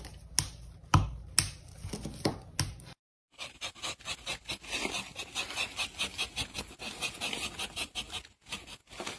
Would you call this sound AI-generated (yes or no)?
no